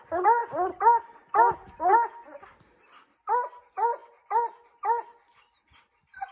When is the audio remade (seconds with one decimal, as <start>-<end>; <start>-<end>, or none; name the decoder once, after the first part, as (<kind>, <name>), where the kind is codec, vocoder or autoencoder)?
none